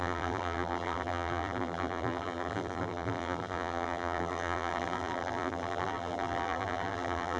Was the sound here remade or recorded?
remade